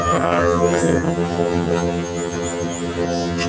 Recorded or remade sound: remade